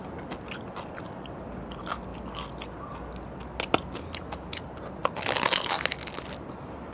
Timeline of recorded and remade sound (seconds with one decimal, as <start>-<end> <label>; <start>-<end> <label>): 0.0-6.9 recorded